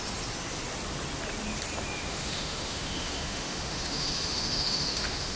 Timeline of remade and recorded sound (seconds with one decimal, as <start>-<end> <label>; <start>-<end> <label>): 0.0-2.1 recorded; 2.1-5.4 remade